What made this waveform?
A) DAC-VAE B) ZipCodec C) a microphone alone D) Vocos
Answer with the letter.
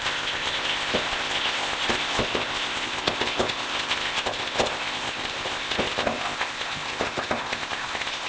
B